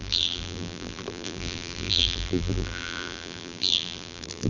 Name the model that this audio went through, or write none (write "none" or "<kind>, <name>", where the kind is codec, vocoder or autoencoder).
vocoder, BigVGAN v2